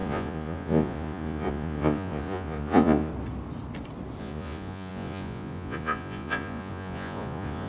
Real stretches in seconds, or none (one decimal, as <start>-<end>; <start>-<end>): 3.1-4.2